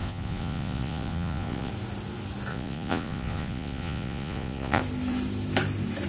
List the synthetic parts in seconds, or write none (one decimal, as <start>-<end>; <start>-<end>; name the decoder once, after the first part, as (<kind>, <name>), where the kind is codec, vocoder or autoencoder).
0.0-1.7 (vocoder, Vocos); 2.5-4.8